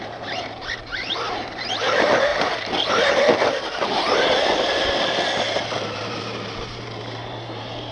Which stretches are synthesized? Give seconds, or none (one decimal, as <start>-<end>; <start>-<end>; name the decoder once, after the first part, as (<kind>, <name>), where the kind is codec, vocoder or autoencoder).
0.0-7.9 (vocoder, BigVGAN v2)